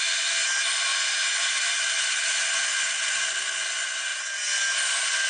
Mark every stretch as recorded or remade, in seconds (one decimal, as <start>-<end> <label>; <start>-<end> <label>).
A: 0.0-5.3 recorded